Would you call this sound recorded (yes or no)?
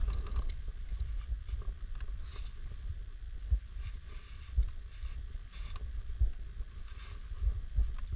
yes